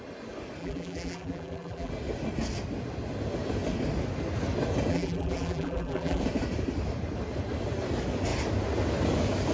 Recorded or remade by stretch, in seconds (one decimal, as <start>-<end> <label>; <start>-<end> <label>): 0.0-0.6 recorded; 0.6-1.9 remade; 1.9-4.9 recorded; 4.9-6.2 remade; 6.2-9.5 recorded